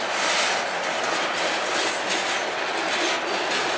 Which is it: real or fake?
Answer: real